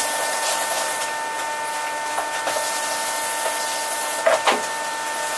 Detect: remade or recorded recorded